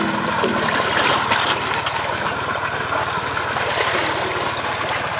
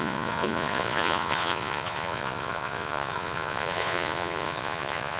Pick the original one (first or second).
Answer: first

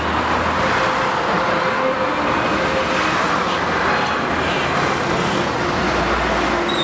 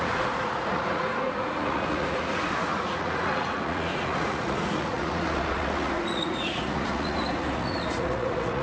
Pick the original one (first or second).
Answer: first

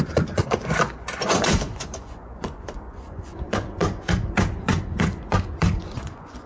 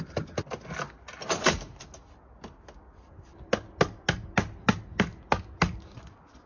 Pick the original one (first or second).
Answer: second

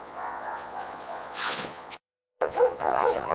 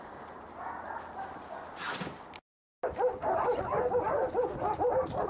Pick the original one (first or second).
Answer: second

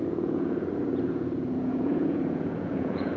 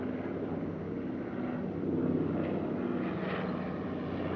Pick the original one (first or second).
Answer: second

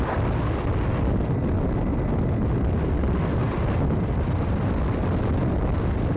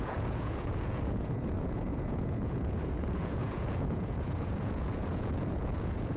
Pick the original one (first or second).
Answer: first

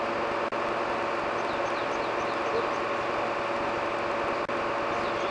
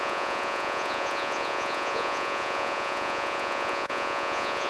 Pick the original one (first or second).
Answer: first